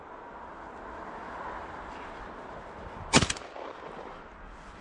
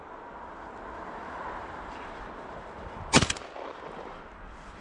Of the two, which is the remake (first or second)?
second